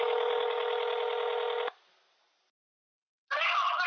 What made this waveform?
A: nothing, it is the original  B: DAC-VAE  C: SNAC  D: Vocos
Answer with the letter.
A